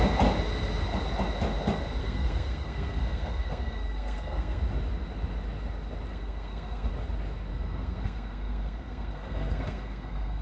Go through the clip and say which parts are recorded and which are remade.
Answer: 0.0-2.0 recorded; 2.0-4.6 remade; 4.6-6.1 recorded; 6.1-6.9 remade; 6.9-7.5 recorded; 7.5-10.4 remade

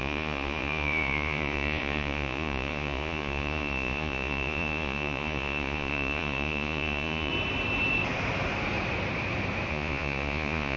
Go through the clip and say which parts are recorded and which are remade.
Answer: 0.0-7.3 remade; 7.3-9.7 recorded; 9.7-10.8 remade

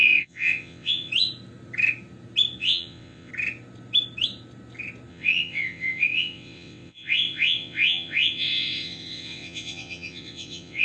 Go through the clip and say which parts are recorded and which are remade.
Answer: 0.0-1.1 remade; 1.1-2.6 recorded; 2.6-3.3 remade; 3.3-5.1 recorded; 5.1-10.8 remade

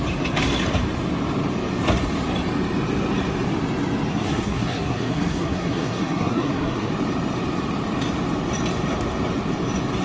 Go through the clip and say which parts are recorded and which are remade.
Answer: 0.0-4.1 recorded; 4.1-6.9 remade; 6.9-10.0 recorded

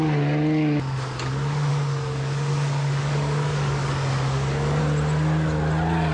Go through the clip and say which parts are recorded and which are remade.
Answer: 0.0-1.7 recorded; 1.7-4.8 remade; 4.8-6.1 recorded

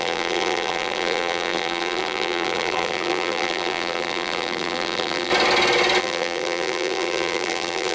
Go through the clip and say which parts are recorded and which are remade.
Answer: 0.0-5.3 remade; 5.3-6.0 recorded; 6.0-7.9 remade

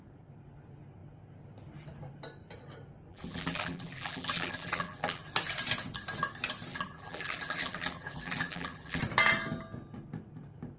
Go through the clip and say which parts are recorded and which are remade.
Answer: 0.0-3.1 recorded; 3.1-5.2 remade; 5.2-6.7 recorded; 6.7-9.0 remade; 9.0-10.8 recorded